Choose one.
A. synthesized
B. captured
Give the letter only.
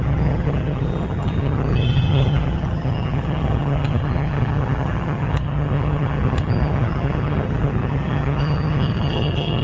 A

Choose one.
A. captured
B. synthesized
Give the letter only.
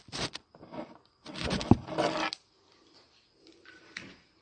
A